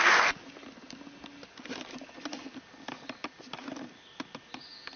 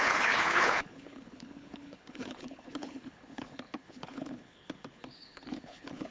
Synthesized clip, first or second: second